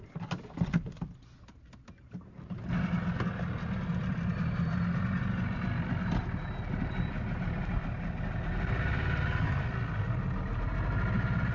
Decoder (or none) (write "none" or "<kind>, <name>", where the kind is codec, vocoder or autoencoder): none